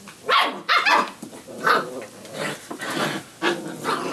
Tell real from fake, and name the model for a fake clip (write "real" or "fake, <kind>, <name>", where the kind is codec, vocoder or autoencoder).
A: real